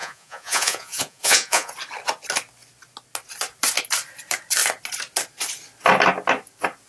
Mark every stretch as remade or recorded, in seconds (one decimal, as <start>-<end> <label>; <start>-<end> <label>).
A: 0.0-1.7 remade; 1.7-6.9 recorded

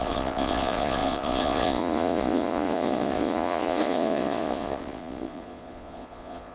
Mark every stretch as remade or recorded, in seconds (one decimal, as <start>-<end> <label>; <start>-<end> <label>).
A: 0.0-6.5 remade

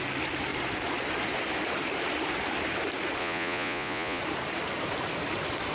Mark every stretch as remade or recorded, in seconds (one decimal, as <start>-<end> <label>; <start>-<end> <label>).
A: 0.0-3.2 recorded; 3.2-4.2 remade; 4.2-5.7 recorded

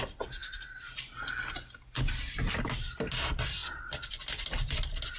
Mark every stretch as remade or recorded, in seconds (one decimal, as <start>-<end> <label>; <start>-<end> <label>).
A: 0.0-5.2 recorded

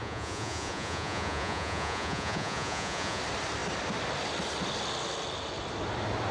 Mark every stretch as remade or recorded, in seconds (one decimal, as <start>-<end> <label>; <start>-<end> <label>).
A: 0.0-3.2 remade; 3.2-6.3 recorded

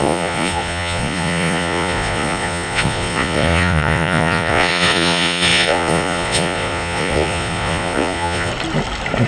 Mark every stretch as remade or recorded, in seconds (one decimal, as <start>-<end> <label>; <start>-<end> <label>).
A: 0.0-8.5 remade; 8.5-9.3 recorded

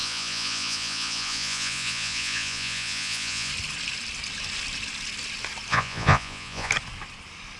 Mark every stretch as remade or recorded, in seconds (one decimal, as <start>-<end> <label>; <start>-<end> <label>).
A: 0.0-3.5 remade; 3.5-5.7 recorded; 5.7-6.7 remade; 6.7-7.6 recorded